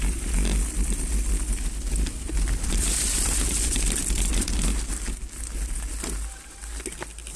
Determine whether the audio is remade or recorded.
recorded